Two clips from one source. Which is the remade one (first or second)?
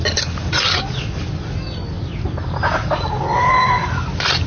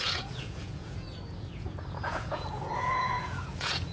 second